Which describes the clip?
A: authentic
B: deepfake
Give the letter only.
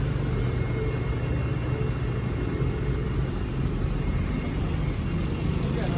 A